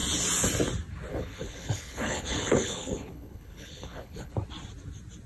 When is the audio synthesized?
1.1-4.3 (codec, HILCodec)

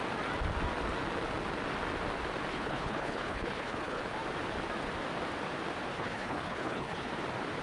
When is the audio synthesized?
2.5-4.0 (codec, HILCodec); 5.9-7.1

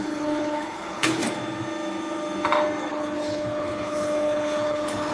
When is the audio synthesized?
0.0-1.2 (codec, HILCodec); 2.9-5.1

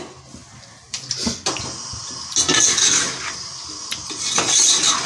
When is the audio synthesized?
none

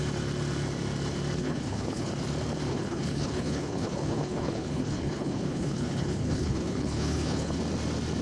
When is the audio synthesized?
1.4-2.1 (codec, HILCodec); 2.7-7.6

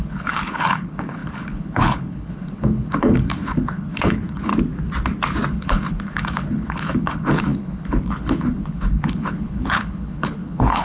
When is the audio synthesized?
0.0-4.5 (codec, HILCodec); 5.5-10.8